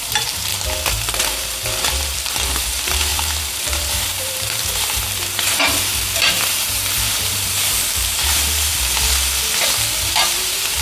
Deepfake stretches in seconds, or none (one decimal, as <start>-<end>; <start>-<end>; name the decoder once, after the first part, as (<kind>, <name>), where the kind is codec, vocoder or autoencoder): 0.0-0.5 (vocoder, BigVGAN v2); 1.2-8.7; 10.0-10.8